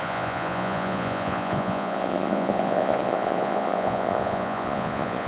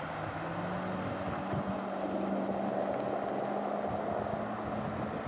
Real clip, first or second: second